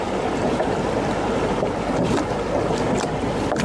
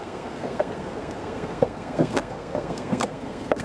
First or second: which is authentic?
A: first